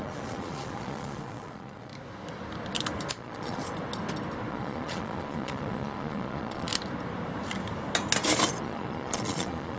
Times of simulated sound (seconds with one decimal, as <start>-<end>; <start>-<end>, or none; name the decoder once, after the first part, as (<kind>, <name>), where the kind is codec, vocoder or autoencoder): 0.0-1.9 (vocoder, Vocos); 3.1-3.6; 4.5-6.7; 8.6-9.8